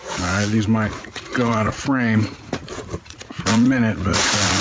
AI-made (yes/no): yes